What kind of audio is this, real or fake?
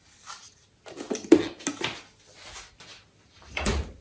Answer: real